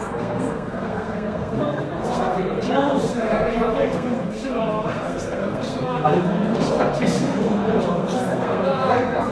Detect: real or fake fake